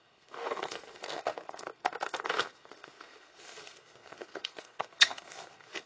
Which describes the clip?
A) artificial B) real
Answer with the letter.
A